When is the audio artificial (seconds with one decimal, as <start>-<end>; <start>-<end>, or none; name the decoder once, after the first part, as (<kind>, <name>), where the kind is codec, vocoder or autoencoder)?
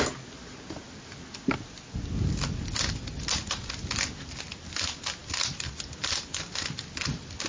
none